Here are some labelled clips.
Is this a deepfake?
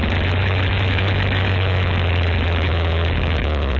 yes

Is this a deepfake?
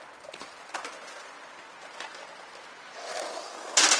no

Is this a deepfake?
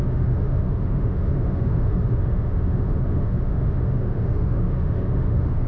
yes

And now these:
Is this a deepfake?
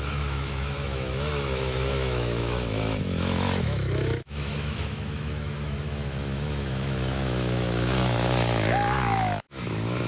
yes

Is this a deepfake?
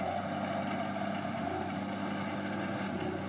no